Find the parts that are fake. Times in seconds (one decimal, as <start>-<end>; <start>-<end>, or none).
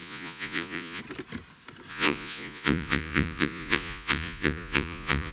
0.0-1.0; 1.9-5.3